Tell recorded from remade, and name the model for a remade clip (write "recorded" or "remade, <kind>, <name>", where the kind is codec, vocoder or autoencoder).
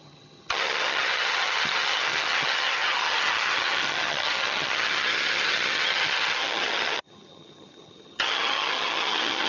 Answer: remade, vocoder, HiFi-GAN